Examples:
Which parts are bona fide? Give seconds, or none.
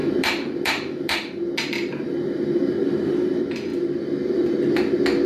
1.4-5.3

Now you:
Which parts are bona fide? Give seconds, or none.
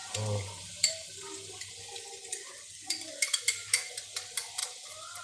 2.6-4.6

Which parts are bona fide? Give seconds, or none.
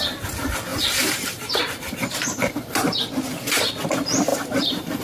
0.0-0.7; 3.1-4.3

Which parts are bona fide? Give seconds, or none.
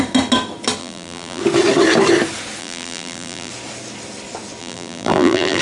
0.0-0.8; 1.4-2.6; 3.5-4.6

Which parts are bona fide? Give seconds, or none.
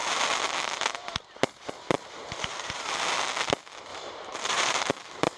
0.0-2.2; 2.9-3.9; 4.9-5.4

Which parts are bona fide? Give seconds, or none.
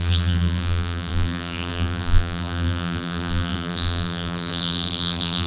none